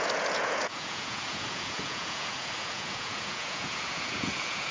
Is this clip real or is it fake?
fake